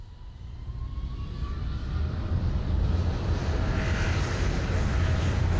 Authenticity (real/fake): fake